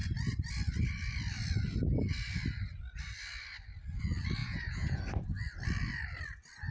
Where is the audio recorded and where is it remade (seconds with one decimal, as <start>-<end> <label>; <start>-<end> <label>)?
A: 0.0-4.4 recorded; 4.4-5.0 remade; 5.0-6.7 recorded